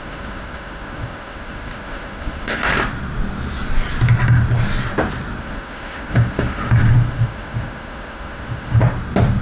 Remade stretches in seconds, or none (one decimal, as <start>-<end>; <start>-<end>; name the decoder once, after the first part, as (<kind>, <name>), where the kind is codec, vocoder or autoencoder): 0.0-2.7 (autoencoder, DAC-VAE); 5.4-8.8